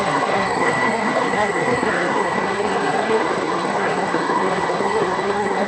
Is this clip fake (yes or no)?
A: yes